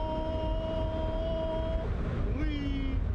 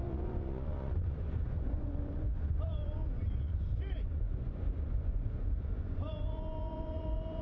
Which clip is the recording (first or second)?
first